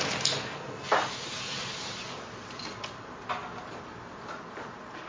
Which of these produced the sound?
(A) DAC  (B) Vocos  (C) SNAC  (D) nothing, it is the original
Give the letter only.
D